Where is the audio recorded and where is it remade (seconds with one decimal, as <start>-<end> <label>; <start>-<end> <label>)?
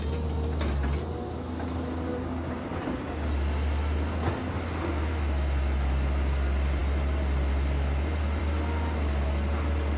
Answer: 0.0-10.0 recorded